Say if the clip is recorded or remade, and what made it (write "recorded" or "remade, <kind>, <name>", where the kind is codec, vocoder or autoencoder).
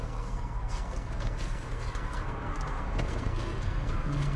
remade, codec, SNAC